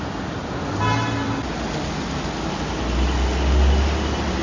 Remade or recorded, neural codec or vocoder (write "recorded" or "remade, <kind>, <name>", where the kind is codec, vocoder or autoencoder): recorded